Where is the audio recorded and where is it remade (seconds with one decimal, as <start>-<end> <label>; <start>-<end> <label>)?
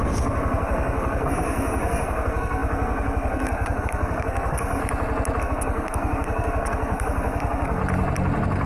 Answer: 0.0-4.8 remade; 4.8-5.4 recorded; 5.4-7.8 remade; 7.8-8.7 recorded